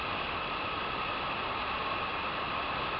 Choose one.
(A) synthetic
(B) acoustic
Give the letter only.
B